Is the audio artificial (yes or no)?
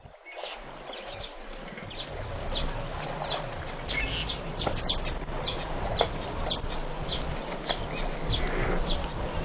no